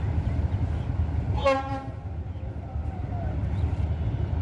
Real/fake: real